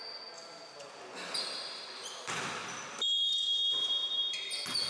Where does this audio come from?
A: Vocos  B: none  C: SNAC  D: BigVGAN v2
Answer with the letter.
B